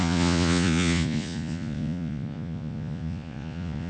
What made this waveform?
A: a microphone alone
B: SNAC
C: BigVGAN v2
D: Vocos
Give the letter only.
D